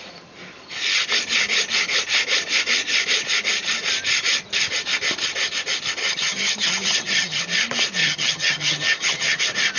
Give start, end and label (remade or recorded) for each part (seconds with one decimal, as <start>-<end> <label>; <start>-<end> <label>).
0.0-6.0 recorded; 6.0-7.4 remade; 7.4-8.0 recorded; 8.0-9.4 remade; 9.4-9.8 recorded